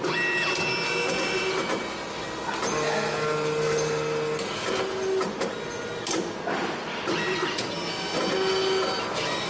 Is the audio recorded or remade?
recorded